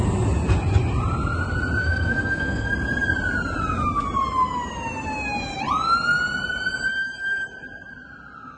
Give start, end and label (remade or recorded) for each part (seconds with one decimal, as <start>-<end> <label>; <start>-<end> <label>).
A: 0.0-1.8 recorded; 1.8-2.7 remade; 2.7-8.6 recorded